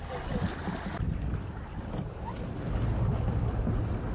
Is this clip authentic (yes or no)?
yes